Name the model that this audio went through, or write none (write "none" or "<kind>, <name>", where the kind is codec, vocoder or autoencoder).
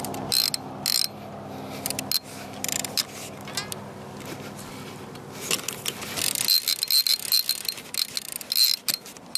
none